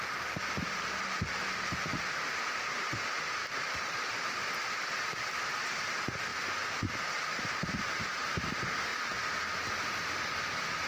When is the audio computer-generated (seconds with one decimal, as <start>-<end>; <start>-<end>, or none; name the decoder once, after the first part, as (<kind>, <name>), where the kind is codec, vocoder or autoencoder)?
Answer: 0.0-6.3 (vocoder, BigVGAN v2); 7.4-10.9